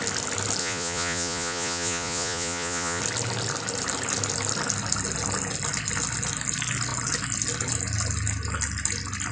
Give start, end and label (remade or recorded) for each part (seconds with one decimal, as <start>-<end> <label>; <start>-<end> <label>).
0.0-0.6 recorded; 0.6-3.0 remade; 3.0-9.3 recorded